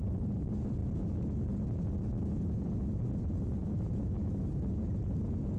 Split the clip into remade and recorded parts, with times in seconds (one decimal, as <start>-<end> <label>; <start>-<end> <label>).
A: 0.0-3.6 recorded; 3.6-4.5 remade; 4.5-5.6 recorded